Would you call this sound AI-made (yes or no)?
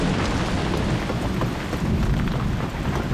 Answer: no